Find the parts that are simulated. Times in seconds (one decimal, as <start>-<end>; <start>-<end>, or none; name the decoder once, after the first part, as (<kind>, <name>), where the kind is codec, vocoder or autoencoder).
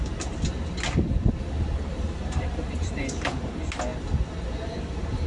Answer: 1.9-3.5 (vocoder, BigVGAN v2)